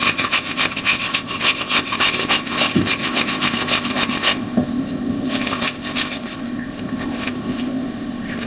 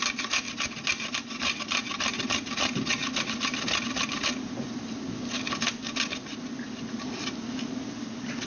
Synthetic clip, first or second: first